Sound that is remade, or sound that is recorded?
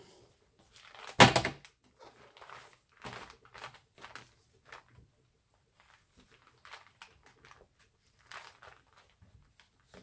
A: recorded